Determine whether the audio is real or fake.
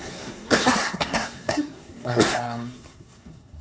fake